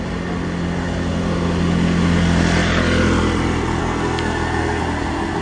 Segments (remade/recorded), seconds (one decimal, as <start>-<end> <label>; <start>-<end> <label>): 0.0-3.8 recorded; 3.8-4.8 remade; 4.8-5.4 recorded